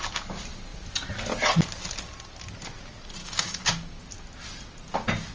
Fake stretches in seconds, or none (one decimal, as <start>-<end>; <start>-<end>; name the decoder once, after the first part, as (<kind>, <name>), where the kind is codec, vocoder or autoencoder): 3.2-4.0 (codec, DAC)